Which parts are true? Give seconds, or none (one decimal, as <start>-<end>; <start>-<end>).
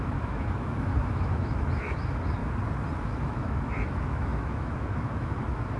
2.4-3.0